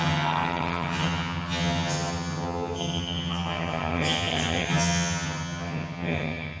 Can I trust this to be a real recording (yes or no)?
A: no